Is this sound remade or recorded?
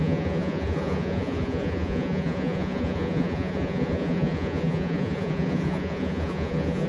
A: remade